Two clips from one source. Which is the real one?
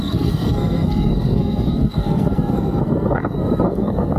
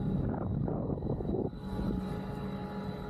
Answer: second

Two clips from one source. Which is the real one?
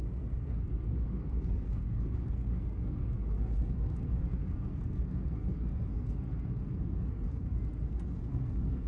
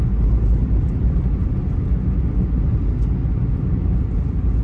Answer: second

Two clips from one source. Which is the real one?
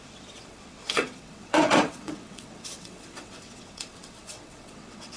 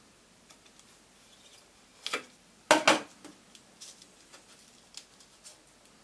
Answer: second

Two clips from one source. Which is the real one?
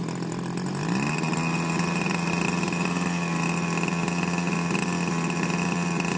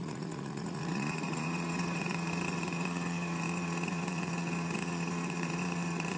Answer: first